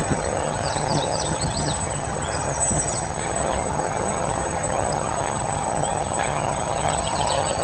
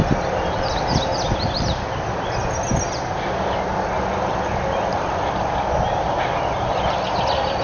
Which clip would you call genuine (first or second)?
second